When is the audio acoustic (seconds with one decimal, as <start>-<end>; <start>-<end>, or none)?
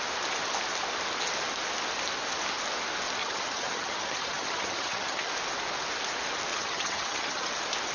0.0-3.2; 5.3-6.5; 7.5-7.9